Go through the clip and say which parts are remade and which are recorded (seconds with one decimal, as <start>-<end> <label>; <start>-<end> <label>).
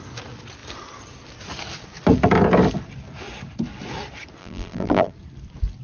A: 0.0-4.4 recorded; 4.4-5.1 remade; 5.1-5.8 recorded